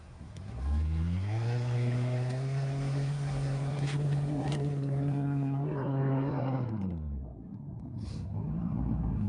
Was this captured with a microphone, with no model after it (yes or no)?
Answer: no